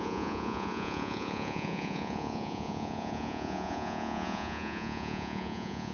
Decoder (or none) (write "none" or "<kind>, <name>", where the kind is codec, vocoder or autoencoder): vocoder, Vocos